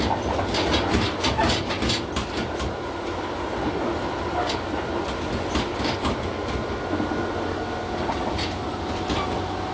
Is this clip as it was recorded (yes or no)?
yes